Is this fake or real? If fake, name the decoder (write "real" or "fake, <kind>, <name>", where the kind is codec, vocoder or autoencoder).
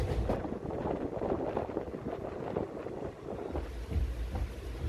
real